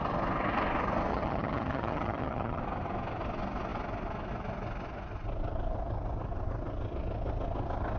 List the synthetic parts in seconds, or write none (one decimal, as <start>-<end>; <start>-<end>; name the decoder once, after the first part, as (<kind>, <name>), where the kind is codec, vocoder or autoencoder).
1.1-2.6 (vocoder, HiFi-GAN)